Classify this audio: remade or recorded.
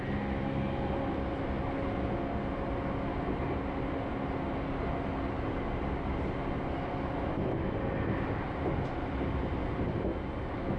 recorded